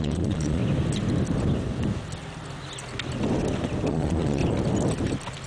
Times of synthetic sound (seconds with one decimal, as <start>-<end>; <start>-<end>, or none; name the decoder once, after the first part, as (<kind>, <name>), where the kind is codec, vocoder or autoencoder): 0.0-0.6 (vocoder, Vocos); 3.9-4.4